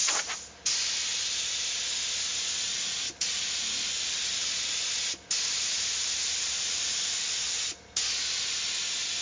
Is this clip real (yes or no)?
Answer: yes